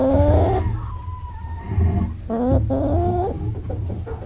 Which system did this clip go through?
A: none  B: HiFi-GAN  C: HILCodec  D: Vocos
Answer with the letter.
A